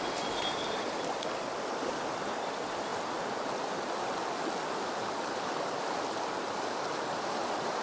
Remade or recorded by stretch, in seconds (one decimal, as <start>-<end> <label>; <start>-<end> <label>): 0.0-7.8 recorded

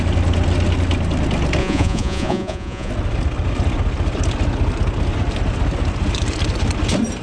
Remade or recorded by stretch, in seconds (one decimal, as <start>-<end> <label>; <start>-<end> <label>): 0.0-1.6 recorded; 1.6-2.9 remade; 2.9-7.2 recorded

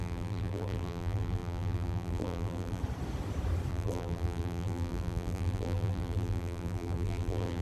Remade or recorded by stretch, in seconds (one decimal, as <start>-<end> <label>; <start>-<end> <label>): 0.0-2.8 remade; 2.8-3.7 recorded; 3.7-7.6 remade

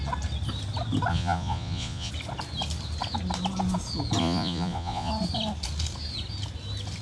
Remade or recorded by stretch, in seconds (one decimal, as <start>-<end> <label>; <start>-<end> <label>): 0.0-1.1 recorded; 1.1-2.1 remade; 2.1-4.2 recorded; 4.2-5.1 remade; 5.1-7.0 recorded